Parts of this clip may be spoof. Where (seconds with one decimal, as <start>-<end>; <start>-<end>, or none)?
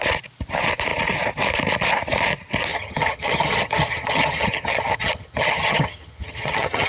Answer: 2.7-6.9